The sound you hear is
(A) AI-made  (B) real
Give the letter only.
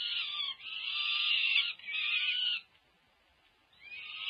B